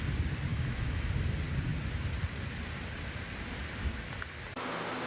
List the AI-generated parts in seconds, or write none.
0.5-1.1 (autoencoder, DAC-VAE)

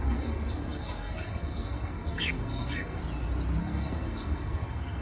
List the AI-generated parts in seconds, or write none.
0.0-3.0 (codec, SNAC); 3.6-5.0

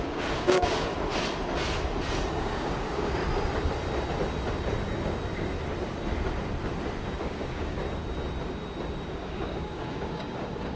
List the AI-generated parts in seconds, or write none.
0.0-0.9 (codec, DAC); 2.4-3.2; 7.2-7.8; 9.1-10.8

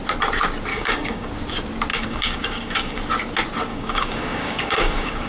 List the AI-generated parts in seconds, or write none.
0.7-1.3 (codec, DAC); 1.9-3.0; 3.7-5.3

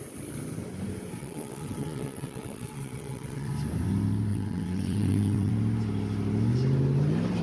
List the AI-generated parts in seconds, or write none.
1.2-3.5 (vocoder, WaveNeXt); 4.3-5.5

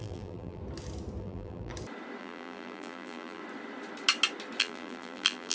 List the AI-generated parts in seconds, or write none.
0.0-0.6 (vocoder, BigVGAN v2); 1.2-1.7; 2.2-3.4; 4.6-5.5

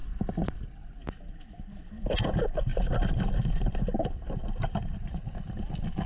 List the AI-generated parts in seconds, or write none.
2.7-3.8 (vocoder, BigVGAN v2); 4.4-5.3